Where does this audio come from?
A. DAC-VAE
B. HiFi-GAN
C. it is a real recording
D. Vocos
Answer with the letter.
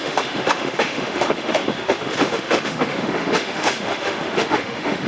A